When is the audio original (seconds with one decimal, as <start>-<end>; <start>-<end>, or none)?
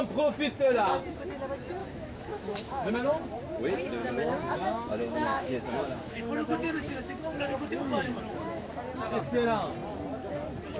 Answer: 0.0-1.8; 2.9-4.0; 8.7-10.8